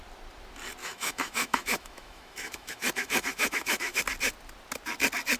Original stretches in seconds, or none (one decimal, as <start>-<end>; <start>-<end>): 0.0-0.8; 4.0-5.4